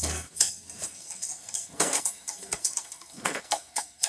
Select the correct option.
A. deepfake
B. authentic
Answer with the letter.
A